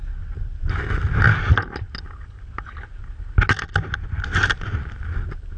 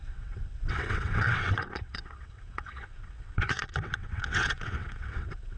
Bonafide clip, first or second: first